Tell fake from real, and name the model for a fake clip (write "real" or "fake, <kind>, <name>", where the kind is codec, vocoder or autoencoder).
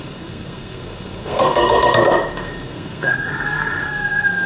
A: fake, codec, SNAC